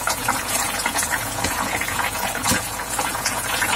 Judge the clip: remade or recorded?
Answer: remade